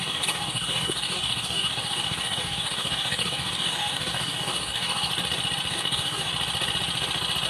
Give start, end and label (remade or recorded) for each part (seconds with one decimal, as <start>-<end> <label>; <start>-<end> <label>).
0.0-5.1 remade; 5.1-5.7 recorded; 5.7-6.3 remade; 6.3-7.5 recorded